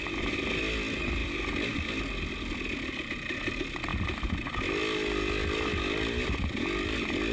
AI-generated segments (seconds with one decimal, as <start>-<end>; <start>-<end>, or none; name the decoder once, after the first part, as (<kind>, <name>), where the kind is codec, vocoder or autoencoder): none